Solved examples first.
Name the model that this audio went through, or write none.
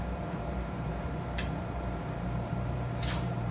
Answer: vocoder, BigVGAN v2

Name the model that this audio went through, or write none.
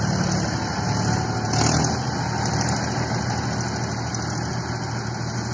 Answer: none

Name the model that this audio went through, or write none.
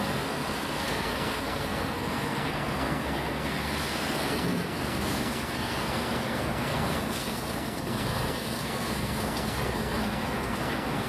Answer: codec, SNAC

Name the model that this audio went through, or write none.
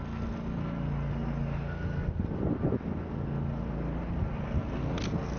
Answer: none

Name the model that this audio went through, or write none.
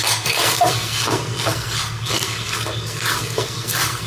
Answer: codec, SNAC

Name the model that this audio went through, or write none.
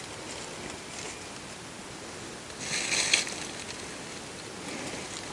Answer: none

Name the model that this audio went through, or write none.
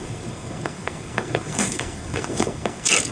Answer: codec, SNAC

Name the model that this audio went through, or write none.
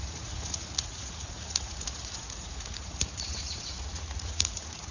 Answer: vocoder, Vocos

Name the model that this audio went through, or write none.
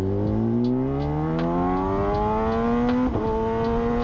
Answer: none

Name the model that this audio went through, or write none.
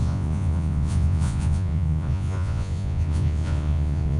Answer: vocoder, Vocos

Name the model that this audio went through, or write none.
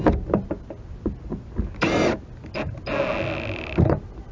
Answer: none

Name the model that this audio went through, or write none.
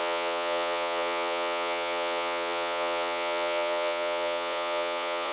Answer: vocoder, Vocos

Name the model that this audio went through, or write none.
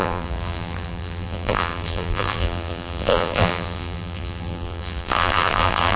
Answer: vocoder, BigVGAN v2